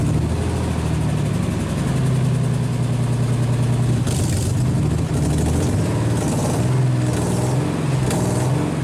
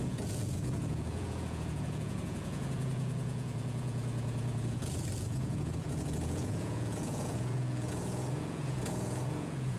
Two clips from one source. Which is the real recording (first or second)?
first